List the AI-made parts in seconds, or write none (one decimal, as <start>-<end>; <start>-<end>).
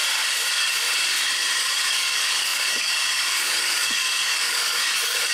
1.6-5.3